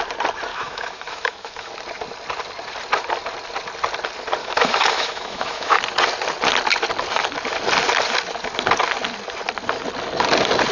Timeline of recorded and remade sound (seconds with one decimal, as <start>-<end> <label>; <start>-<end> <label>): 0.0-0.5 recorded; 0.5-1.7 remade; 1.7-4.4 recorded; 4.4-5.8 remade; 5.8-10.7 recorded